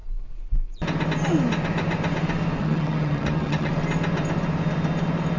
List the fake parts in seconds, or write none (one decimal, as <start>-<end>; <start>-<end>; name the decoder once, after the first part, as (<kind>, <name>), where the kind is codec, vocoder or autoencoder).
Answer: 2.6-3.7 (vocoder, HiFi-GAN)